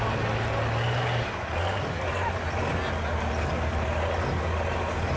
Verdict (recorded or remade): recorded